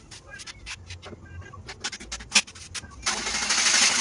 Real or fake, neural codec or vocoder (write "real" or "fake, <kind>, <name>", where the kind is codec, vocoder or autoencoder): real